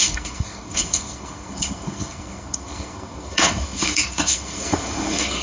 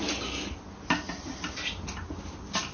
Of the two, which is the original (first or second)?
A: second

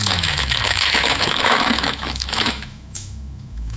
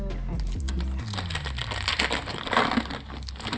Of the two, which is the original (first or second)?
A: second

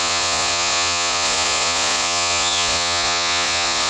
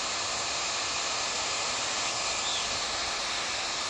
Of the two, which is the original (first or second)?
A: second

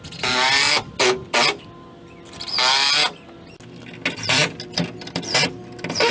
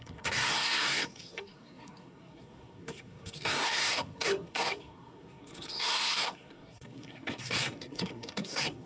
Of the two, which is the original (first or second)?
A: first